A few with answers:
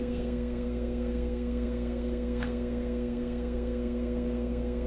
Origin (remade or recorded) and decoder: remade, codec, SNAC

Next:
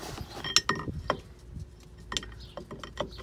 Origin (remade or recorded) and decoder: recorded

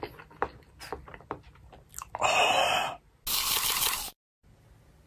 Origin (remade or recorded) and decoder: recorded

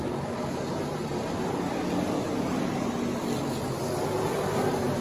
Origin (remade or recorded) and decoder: recorded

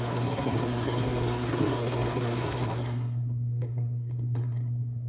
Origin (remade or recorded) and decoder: remade, codec, SNAC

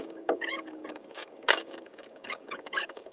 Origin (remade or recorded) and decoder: remade, codec, DAC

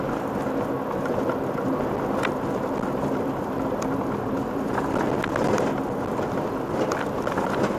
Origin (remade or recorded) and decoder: recorded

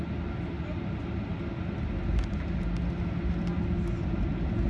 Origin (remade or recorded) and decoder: recorded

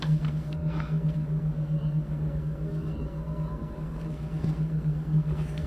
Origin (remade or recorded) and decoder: remade, codec, SNAC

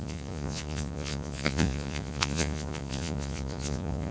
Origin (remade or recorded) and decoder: remade, vocoder, Vocos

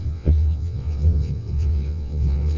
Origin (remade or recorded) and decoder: remade, vocoder, WaveNeXt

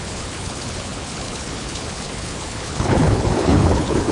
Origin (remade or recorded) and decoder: remade, codec, HILCodec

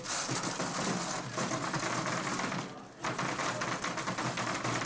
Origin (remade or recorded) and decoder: recorded